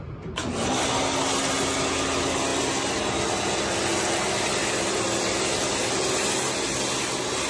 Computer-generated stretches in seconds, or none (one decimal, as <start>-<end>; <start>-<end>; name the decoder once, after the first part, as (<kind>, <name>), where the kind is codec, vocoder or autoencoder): none

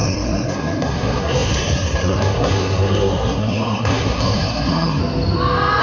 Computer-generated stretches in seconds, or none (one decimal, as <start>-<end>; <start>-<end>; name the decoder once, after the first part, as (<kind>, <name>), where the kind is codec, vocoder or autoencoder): 0.0-5.0 (codec, SNAC)

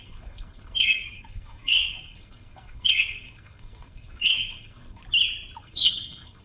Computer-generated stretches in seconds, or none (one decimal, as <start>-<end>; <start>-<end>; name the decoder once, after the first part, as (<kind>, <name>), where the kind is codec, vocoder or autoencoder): 0.0-5.0 (codec, SNAC); 5.6-6.4

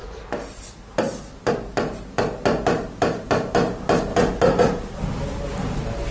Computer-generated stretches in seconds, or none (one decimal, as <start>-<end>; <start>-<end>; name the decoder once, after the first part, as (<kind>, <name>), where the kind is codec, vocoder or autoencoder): none